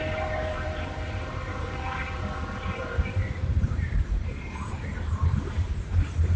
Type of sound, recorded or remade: remade